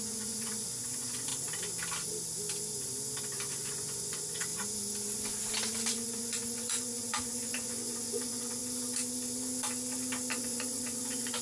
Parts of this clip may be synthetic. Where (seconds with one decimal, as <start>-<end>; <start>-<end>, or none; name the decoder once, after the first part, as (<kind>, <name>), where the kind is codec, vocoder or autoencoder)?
0.0-1.3 (vocoder, Vocos); 3.5-4.5; 5.9-8.6; 10.3-11.4